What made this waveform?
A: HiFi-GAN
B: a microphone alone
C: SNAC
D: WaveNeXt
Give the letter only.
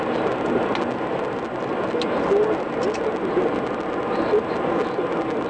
B